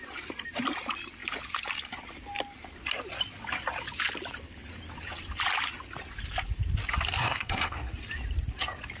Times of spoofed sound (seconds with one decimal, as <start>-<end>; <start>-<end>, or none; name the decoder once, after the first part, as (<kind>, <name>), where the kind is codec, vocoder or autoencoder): 7.2-7.9 (codec, SNAC)